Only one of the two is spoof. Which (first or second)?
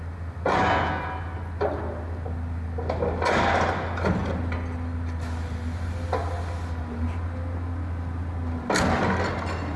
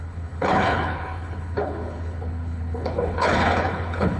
second